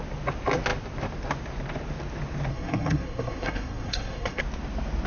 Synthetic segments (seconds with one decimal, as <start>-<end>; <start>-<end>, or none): 2.5-4.4